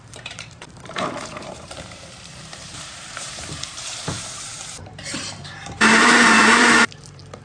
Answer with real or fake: fake